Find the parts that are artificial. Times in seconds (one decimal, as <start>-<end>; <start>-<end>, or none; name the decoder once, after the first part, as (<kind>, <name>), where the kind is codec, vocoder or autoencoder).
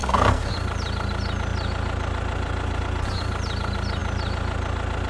0.0-0.5 (codec, SNAC)